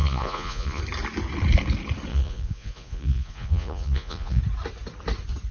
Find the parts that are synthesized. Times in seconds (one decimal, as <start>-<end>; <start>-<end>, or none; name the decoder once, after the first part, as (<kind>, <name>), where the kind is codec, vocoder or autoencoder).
0.0-0.8 (vocoder, Vocos); 2.1-4.4